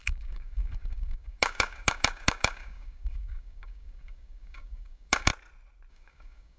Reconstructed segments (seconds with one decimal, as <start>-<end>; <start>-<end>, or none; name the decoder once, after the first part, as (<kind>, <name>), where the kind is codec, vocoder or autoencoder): 0.0-5.3 (codec, DAC); 5.9-6.6